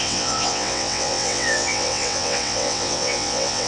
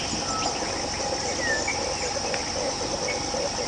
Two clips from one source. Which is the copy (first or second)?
first